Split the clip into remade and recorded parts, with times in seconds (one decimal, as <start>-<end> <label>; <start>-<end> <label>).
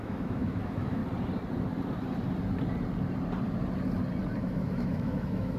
0.0-1.0 remade; 1.0-4.4 recorded; 4.4-5.6 remade